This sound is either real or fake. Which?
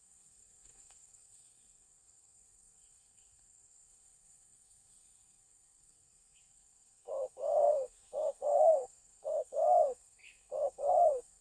fake